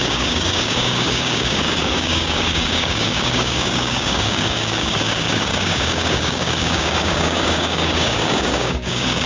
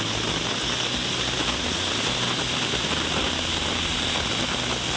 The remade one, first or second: first